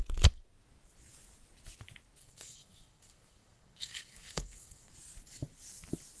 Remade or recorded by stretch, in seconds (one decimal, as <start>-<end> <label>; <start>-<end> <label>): 0.0-2.2 recorded; 2.2-4.9 remade; 4.9-6.2 recorded